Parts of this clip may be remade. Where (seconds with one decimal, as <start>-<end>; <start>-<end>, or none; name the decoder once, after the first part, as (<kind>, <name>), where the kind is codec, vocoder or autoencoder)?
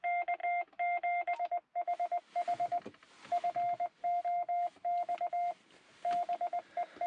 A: none